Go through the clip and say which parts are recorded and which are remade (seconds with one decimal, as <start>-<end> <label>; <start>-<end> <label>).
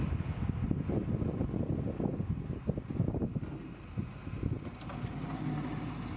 0.0-6.2 recorded